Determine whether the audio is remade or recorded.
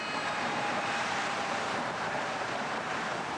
remade